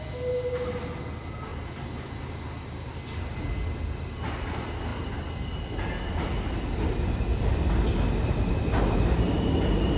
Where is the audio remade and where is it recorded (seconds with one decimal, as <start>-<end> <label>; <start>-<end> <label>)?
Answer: 0.0-10.0 recorded